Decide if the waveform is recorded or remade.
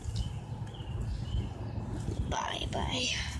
recorded